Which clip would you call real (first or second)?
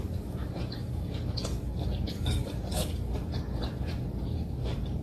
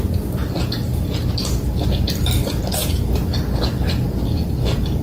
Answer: second